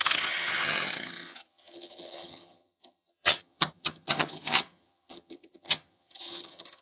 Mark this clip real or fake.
fake